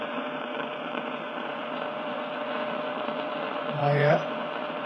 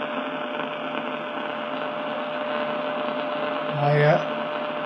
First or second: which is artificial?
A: first